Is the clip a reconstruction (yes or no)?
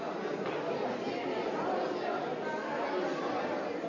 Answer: no